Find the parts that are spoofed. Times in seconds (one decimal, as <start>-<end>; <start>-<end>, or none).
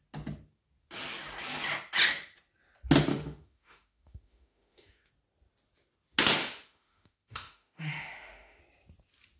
3.1-5.1; 6.4-8.6